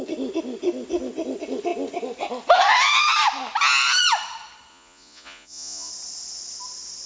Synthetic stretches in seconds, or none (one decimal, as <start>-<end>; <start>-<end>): 4.7-5.9